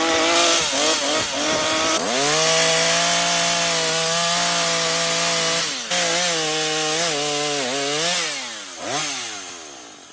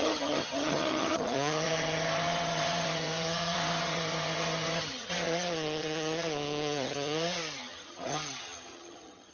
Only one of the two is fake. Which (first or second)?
second